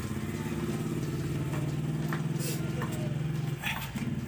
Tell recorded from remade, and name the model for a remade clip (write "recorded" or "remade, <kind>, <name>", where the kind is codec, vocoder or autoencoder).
recorded